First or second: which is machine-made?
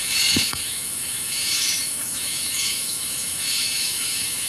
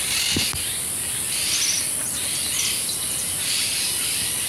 first